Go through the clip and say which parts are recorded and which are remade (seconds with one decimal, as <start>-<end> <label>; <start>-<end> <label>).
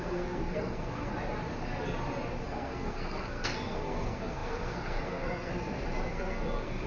0.0-1.1 remade; 1.1-2.4 recorded; 2.4-5.5 remade; 5.5-6.1 recorded; 6.1-6.9 remade